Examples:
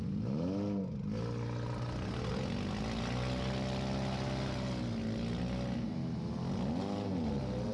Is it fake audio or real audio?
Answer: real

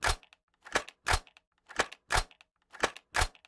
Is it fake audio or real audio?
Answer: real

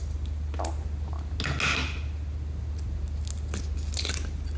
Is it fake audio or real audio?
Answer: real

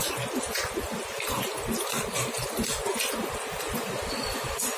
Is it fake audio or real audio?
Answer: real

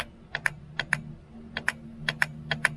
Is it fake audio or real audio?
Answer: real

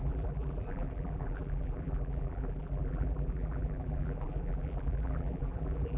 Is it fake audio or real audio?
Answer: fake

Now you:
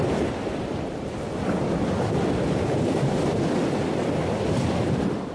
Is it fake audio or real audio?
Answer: fake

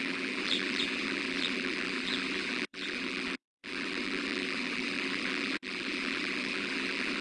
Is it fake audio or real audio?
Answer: fake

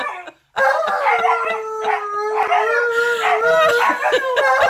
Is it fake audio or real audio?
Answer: real